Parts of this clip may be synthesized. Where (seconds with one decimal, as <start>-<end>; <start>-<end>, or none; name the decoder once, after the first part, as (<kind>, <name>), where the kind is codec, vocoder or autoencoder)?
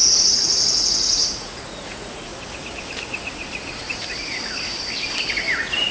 0.0-2.3 (vocoder, Vocos)